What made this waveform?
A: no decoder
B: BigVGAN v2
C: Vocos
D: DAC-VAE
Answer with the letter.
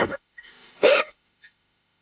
D